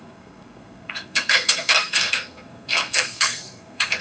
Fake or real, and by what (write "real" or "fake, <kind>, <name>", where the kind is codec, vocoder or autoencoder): fake, codec, SNAC